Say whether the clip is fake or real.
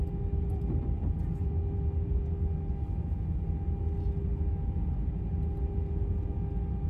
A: real